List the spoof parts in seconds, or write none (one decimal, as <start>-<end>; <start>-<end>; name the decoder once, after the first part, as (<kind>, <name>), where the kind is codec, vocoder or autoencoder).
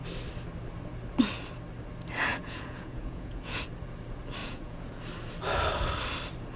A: 2.3-3.6 (vocoder, Vocos); 4.4-5.0